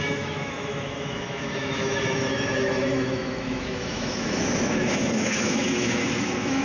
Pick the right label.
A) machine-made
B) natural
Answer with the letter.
A